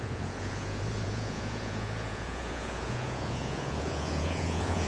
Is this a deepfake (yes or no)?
yes